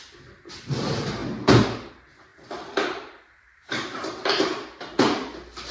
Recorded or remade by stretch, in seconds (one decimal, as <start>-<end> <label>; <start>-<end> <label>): 0.0-2.3 recorded; 2.3-4.5 remade; 4.5-5.7 recorded